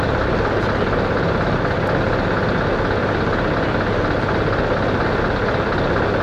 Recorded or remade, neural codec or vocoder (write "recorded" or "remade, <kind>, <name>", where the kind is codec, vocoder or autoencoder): recorded